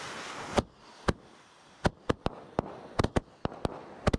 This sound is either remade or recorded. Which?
recorded